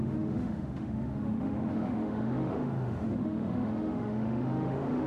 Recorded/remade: remade